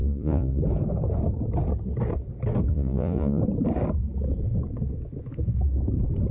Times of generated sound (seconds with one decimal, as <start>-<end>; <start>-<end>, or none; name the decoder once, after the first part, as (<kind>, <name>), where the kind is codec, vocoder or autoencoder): 0.0-0.6 (vocoder, Vocos); 2.7-3.4